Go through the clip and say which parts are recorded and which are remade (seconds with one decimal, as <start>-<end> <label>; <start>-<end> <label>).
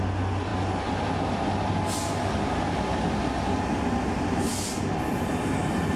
0.0-6.0 recorded